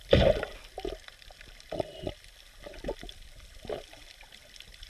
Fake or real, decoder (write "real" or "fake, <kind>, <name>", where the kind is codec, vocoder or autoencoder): real